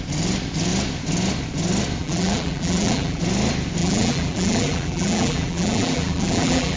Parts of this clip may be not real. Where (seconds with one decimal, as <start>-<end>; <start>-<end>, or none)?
2.0-3.2; 3.8-6.8